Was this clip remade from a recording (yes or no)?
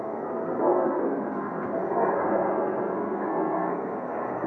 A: yes